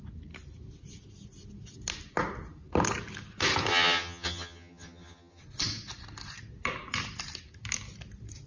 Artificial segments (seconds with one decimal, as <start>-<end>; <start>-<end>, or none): 3.7-5.4